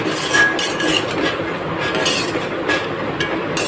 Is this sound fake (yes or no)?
no